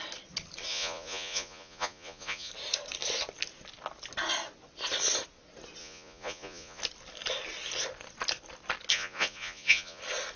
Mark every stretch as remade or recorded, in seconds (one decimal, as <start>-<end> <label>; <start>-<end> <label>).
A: 0.0-0.7 recorded; 0.7-2.5 remade; 2.5-5.8 recorded; 5.8-6.8 remade; 6.8-8.9 recorded; 8.9-10.0 remade; 10.0-10.4 recorded